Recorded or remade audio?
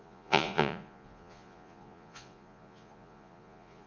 remade